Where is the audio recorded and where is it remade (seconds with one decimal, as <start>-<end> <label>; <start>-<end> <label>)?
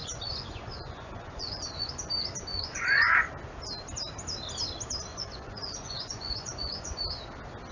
0.0-1.9 remade; 1.9-2.5 recorded; 2.5-3.3 remade; 3.3-5.1 recorded; 5.1-7.0 remade; 7.0-7.7 recorded